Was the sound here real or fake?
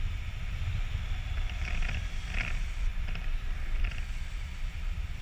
real